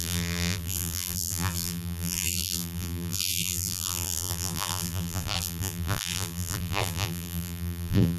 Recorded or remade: remade